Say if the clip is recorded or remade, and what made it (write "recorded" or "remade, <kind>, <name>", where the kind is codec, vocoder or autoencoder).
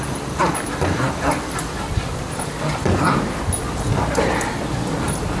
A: recorded